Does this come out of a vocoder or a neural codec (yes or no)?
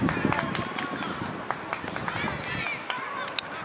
no